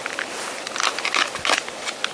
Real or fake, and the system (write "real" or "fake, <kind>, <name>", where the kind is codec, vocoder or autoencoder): fake, vocoder, BigVGAN v2